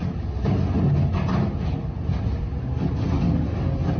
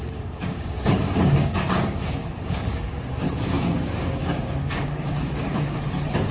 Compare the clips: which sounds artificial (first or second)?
second